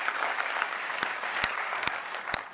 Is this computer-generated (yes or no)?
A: yes